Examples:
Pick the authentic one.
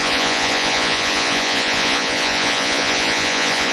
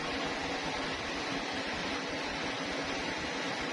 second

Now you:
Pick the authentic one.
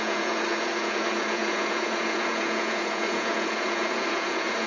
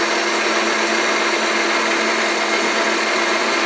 second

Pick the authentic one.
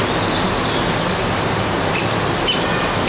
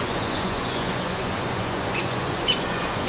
first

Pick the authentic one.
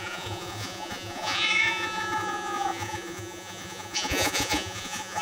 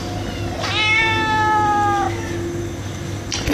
second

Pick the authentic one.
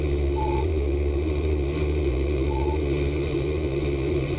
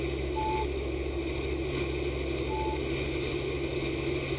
second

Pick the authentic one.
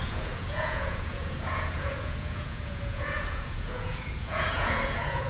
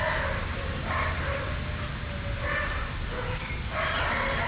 second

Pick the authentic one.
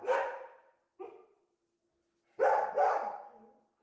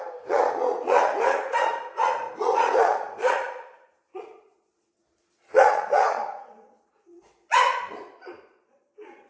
first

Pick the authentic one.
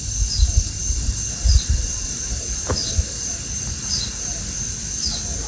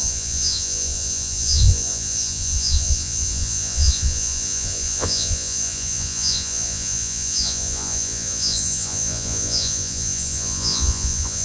first